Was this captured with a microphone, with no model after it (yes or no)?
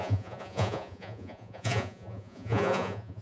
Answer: no